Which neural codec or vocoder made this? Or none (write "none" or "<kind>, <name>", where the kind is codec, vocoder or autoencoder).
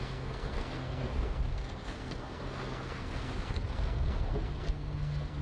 codec, SNAC